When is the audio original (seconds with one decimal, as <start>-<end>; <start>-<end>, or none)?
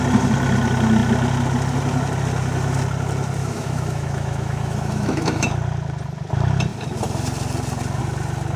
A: 0.0-3.4; 5.5-8.6